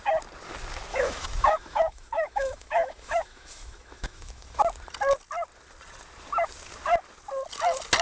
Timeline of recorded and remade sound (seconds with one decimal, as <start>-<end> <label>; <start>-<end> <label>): 0.0-0.9 recorded; 0.9-4.6 remade; 4.6-8.0 recorded